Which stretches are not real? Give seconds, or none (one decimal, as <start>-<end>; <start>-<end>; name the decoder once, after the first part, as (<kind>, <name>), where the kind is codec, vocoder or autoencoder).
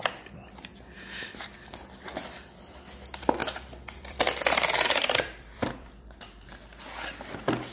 3.4-6.2 (vocoder, BigVGAN v2)